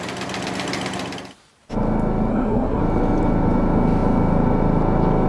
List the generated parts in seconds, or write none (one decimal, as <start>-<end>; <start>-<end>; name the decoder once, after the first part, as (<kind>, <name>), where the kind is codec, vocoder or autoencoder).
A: 2.3-2.8 (codec, SNAC)